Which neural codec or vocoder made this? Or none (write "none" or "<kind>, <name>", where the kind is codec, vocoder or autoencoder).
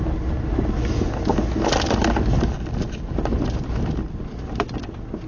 none